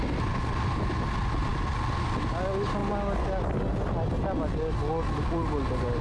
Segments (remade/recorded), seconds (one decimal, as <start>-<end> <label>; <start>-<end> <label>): 0.0-6.0 recorded